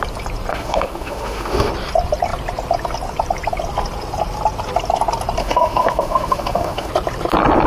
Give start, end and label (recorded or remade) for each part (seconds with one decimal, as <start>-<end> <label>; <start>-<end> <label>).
0.0-0.5 recorded; 0.5-1.7 remade; 1.7-5.4 recorded; 5.4-6.9 remade; 6.9-7.7 recorded